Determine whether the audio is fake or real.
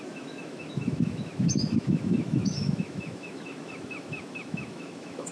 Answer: fake